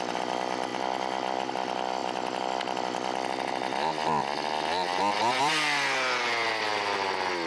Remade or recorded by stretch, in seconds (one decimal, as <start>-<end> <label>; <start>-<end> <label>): 0.0-7.5 recorded